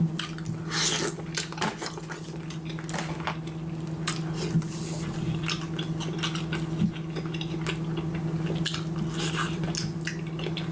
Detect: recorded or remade recorded